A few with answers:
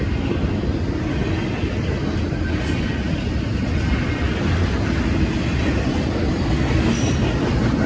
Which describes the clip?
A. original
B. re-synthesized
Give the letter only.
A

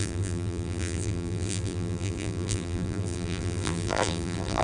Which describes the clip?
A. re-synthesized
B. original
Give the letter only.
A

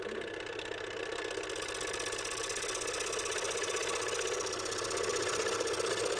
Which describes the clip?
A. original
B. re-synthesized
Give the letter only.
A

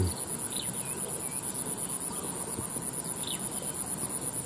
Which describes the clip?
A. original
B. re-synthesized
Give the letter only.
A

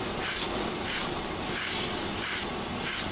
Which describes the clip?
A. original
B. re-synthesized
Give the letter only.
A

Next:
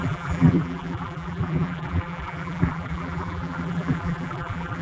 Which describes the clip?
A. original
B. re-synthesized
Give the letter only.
B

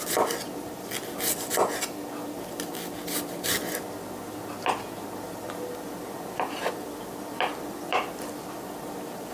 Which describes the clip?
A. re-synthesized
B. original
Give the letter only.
B